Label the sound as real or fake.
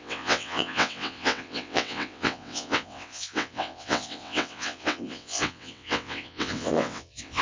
fake